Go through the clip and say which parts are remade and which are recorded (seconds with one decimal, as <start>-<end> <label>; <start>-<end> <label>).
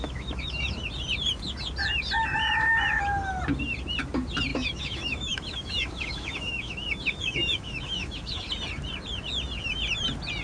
0.0-0.8 remade; 0.8-4.5 recorded; 4.5-8.5 remade; 8.5-10.4 recorded